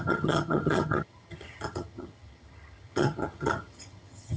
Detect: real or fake fake